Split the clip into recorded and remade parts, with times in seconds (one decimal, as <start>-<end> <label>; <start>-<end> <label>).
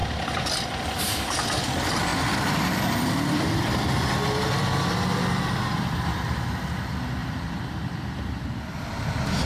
0.0-1.0 remade; 1.0-2.1 recorded; 2.1-6.3 remade; 6.3-7.2 recorded; 7.2-8.7 remade; 8.7-9.5 recorded